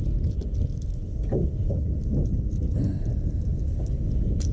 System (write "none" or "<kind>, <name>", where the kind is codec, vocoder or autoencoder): none